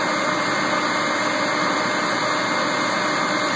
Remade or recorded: recorded